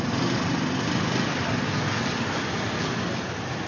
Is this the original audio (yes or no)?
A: yes